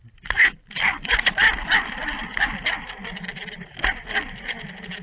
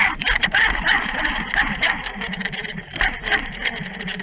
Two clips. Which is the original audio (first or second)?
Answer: first